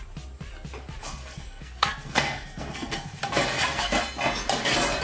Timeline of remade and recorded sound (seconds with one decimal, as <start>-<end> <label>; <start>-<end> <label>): 0.0-1.0 recorded; 1.0-4.0 remade; 4.0-5.0 recorded